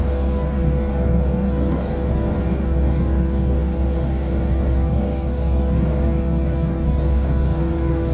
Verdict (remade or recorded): remade